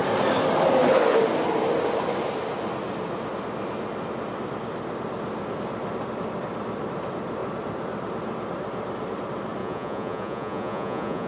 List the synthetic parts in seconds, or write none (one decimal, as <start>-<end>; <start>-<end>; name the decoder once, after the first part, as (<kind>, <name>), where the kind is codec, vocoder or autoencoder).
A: 9.6-11.3 (vocoder, Vocos)